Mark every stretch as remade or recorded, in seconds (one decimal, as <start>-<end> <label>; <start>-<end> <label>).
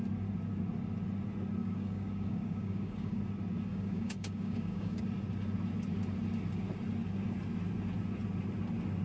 0.0-1.6 recorded; 1.6-3.2 remade; 3.2-3.7 recorded; 3.7-5.0 remade; 5.0-9.0 recorded